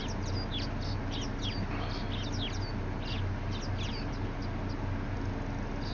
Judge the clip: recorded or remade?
recorded